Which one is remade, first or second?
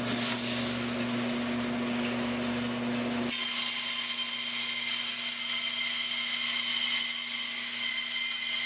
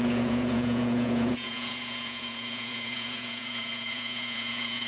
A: second